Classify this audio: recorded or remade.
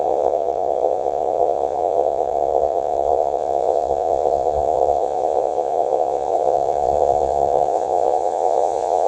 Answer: remade